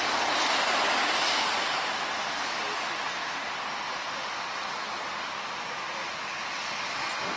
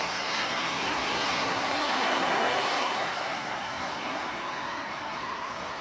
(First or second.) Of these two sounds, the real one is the first